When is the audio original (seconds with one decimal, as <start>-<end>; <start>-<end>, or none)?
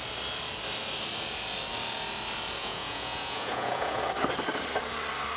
0.0-2.6; 4.0-5.4